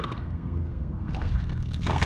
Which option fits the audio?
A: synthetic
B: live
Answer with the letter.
A